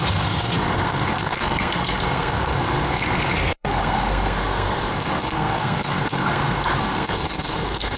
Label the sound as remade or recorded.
remade